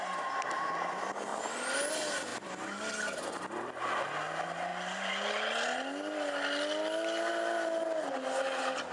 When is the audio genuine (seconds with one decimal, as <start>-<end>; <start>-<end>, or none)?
0.0-8.9